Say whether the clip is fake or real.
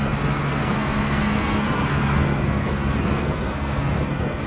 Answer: fake